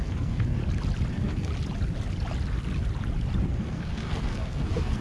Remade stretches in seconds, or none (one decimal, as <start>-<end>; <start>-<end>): 0.0-0.6; 1.1-1.5; 3.4-5.0